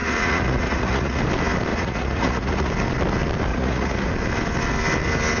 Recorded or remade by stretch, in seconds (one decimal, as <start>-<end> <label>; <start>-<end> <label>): 0.0-1.2 remade; 1.2-1.7 recorded; 1.7-2.7 remade; 2.7-3.5 recorded; 3.5-4.1 remade; 4.1-5.4 recorded